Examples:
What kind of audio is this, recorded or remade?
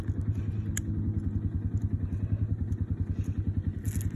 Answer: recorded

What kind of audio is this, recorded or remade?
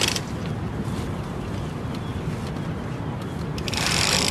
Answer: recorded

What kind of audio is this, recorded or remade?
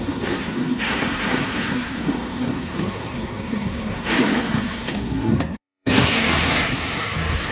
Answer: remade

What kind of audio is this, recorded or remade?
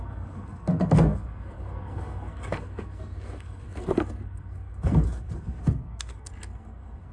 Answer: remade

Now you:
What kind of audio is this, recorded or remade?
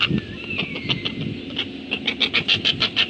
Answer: recorded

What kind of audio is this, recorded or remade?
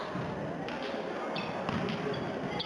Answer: recorded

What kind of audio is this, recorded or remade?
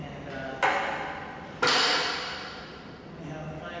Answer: recorded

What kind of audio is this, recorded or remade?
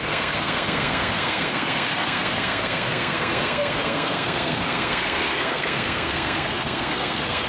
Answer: remade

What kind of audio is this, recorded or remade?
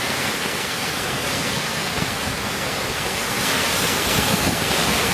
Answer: remade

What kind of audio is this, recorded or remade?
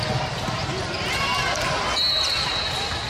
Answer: recorded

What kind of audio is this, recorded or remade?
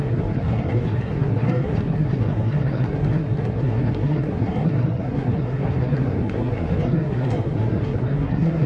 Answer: remade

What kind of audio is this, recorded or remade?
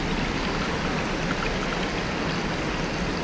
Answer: recorded